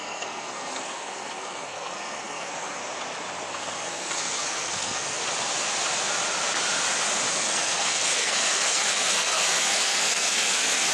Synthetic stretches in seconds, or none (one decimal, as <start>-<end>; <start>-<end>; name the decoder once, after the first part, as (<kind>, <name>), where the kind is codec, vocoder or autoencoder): 0.0-2.8 (codec, SNAC); 3.5-5.2; 7.3-10.9